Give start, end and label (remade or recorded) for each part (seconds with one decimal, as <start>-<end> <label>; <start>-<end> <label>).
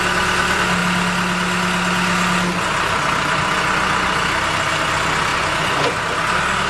0.0-5.3 recorded; 5.3-6.0 remade; 6.0-6.7 recorded